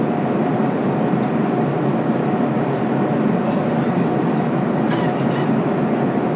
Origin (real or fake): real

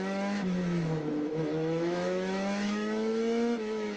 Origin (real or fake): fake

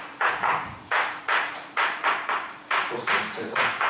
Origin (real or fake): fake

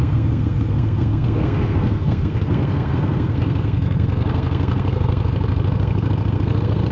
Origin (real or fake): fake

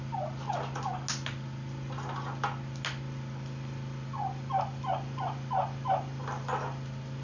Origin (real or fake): real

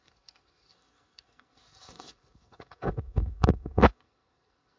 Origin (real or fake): fake